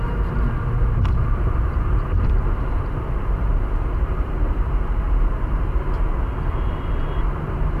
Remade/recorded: remade